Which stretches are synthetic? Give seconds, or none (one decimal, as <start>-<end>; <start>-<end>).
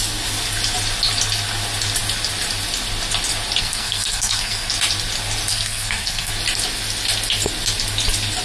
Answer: 3.6-4.7; 5.5-6.3